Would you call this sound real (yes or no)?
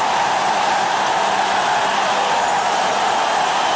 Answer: yes